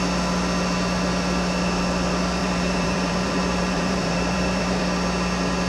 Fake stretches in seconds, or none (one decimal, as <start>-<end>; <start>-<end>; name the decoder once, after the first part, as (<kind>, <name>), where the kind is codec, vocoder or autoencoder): 2.4-4.8 (vocoder, BigVGAN v2)